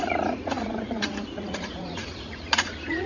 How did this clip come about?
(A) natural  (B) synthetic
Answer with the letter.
B